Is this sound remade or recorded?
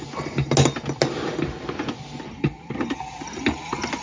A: recorded